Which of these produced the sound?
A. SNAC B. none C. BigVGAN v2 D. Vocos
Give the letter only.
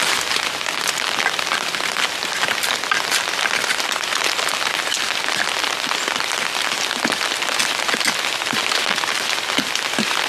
B